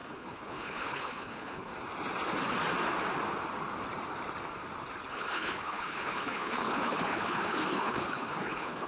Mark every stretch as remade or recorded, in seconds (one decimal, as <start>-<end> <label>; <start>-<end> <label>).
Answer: 0.0-1.7 remade; 1.7-5.1 recorded; 5.1-8.9 remade